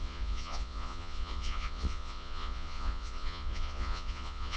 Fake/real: fake